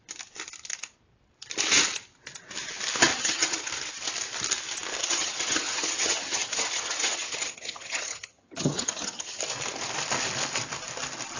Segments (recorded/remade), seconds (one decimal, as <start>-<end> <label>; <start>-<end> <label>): 0.0-3.1 recorded; 3.1-3.7 remade; 3.7-5.0 recorded; 5.0-9.4 remade; 9.4-11.4 recorded